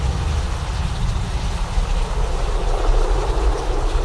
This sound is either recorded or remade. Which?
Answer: recorded